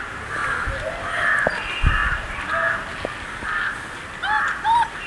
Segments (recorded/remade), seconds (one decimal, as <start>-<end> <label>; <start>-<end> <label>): 0.0-5.1 recorded